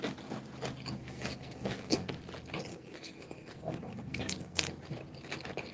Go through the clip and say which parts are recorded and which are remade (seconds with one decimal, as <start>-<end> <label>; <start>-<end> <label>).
0.0-1.0 recorded; 1.0-2.1 remade; 2.1-2.7 recorded; 2.7-4.8 remade; 4.8-5.7 recorded